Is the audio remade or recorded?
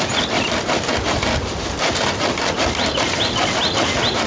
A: recorded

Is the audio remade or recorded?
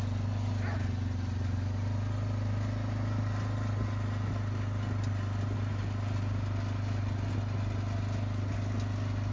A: recorded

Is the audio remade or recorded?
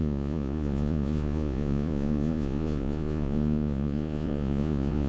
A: remade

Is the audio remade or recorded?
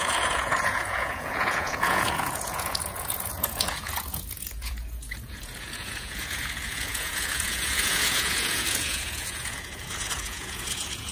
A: remade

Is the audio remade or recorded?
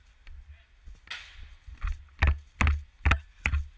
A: recorded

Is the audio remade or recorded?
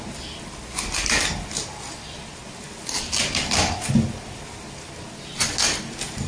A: recorded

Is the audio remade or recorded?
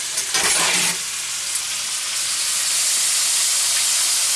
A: recorded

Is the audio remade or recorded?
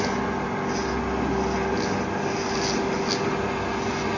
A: recorded